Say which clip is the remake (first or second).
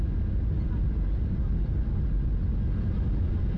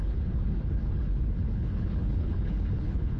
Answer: second